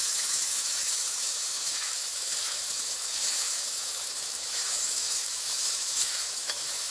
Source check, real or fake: fake